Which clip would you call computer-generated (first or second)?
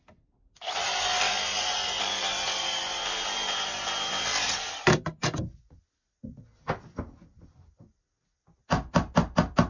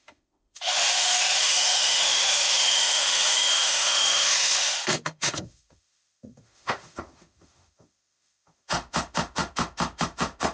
second